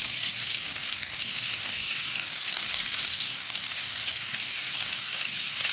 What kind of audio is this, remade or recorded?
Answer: remade